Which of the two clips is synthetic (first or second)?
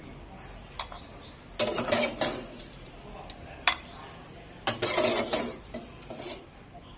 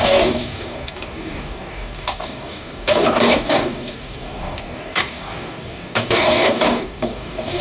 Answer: second